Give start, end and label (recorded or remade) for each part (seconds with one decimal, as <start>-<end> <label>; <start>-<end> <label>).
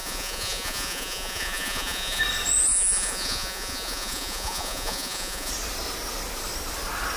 0.0-2.2 remade; 2.2-2.7 recorded; 2.7-5.5 remade; 5.5-7.2 recorded